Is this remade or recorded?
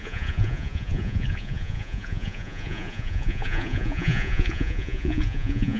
remade